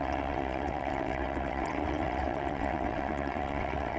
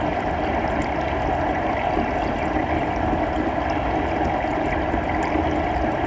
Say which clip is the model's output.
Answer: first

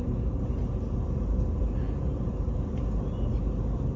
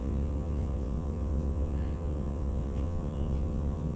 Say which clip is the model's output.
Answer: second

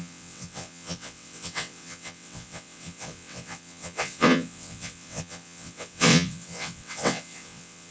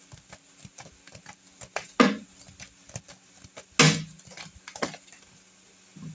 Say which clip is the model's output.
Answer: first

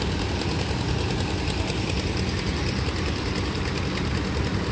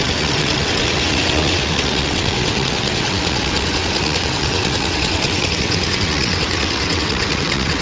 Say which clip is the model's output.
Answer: second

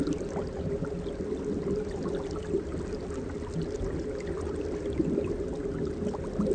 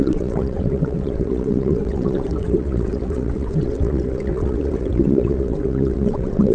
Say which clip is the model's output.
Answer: second